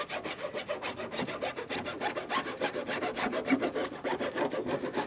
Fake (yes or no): no